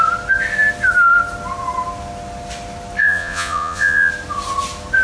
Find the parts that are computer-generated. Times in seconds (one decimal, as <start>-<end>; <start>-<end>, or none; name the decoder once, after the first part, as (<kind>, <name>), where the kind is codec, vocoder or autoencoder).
3.0-4.1 (vocoder, Vocos)